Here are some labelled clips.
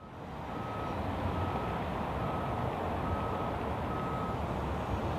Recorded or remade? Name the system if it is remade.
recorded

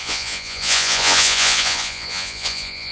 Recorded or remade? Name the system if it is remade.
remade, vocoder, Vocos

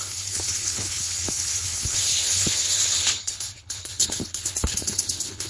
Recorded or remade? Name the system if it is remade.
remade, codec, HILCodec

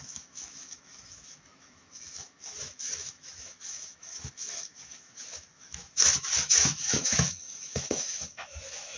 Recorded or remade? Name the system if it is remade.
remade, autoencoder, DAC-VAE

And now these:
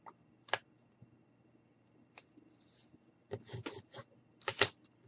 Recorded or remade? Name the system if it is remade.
recorded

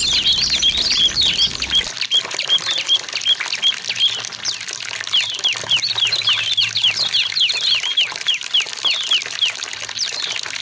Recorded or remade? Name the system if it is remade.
recorded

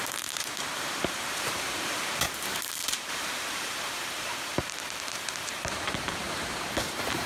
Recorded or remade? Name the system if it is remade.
remade, vocoder, BigVGAN v2